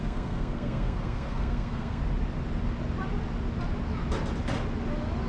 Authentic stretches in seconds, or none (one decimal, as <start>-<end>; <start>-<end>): 2.0-5.3